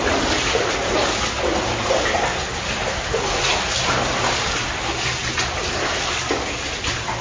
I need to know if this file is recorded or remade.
recorded